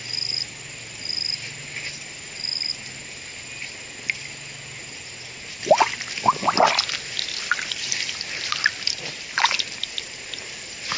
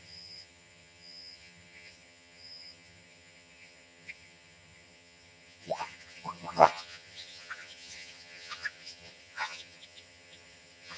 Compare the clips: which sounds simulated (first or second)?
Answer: second